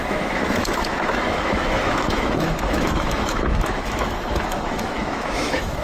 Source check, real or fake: fake